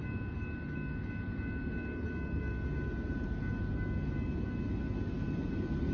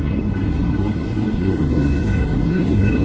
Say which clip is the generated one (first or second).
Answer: second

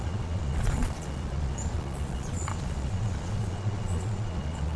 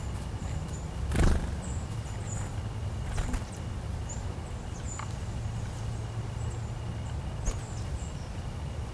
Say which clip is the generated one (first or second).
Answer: first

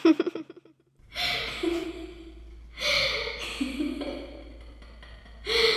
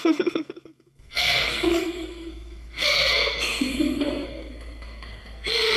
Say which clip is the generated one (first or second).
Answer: second